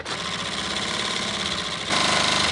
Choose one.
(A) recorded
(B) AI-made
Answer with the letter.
A